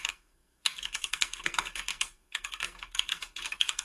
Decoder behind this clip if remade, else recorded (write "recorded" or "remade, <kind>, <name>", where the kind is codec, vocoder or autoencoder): remade, codec, SNAC